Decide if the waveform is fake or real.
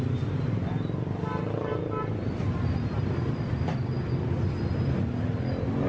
real